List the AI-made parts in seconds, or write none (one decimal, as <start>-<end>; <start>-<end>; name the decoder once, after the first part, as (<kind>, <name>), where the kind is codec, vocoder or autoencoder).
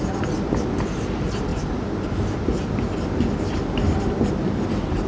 none